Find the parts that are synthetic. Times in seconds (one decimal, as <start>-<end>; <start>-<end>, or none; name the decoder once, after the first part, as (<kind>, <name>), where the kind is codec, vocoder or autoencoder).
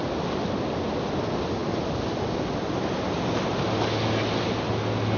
none